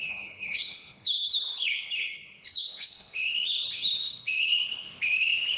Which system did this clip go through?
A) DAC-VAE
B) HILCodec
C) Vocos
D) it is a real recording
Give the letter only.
B